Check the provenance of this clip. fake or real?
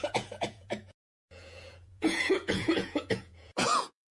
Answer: fake